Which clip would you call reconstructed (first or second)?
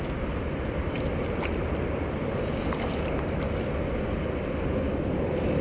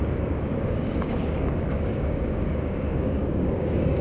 second